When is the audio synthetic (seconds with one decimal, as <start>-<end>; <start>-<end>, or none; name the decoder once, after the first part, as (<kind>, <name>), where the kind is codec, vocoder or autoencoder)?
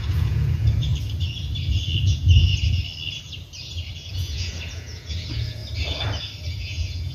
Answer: 0.0-0.9 (vocoder, Vocos); 4.1-5.6; 6.5-7.1